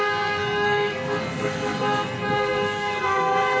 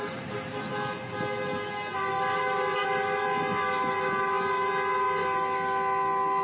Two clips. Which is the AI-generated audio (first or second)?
first